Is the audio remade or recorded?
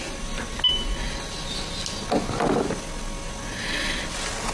recorded